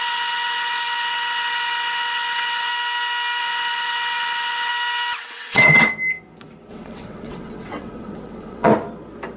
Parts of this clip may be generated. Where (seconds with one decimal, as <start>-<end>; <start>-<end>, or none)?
0.0-2.7; 3.4-4.7; 5.2-5.9; 6.7-8.7